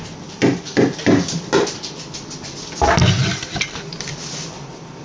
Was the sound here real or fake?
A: real